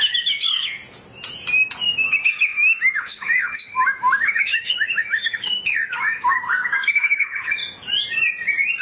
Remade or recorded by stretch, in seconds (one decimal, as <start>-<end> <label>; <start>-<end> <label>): 0.0-0.8 remade; 0.8-1.9 recorded; 1.9-7.6 remade; 7.6-8.8 recorded